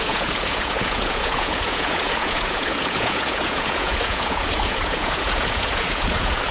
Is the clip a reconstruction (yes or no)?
yes